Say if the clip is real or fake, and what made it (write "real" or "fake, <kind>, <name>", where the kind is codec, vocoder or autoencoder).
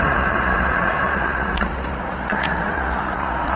fake, vocoder, Vocos